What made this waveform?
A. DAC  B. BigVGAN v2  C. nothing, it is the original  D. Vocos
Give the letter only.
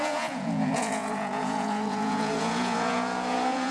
D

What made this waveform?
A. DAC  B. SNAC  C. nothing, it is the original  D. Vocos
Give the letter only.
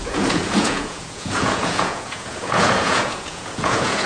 D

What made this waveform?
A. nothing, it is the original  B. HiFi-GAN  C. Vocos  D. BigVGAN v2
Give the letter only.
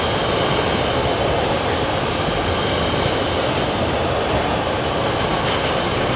A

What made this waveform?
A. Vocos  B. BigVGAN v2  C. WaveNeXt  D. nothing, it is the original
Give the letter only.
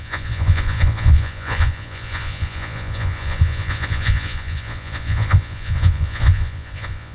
A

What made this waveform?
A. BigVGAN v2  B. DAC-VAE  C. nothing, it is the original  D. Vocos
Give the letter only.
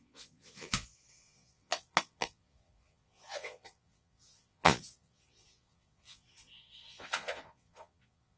D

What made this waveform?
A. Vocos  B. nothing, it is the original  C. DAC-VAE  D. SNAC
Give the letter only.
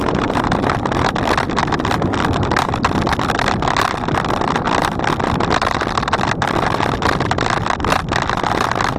B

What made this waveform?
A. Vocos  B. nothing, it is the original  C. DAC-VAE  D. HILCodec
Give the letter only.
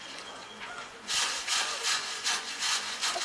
A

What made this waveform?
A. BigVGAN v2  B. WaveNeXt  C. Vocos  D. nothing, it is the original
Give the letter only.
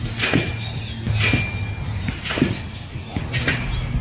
D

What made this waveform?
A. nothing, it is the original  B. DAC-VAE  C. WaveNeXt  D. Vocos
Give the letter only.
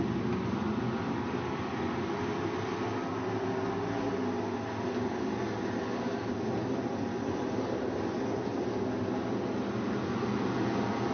A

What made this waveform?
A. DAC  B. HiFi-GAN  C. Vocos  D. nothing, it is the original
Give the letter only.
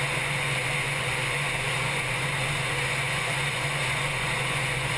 C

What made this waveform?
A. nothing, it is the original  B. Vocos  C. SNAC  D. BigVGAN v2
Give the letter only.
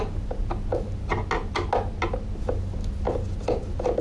A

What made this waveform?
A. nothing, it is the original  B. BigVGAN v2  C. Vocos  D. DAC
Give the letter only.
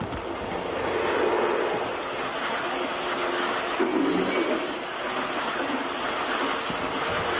A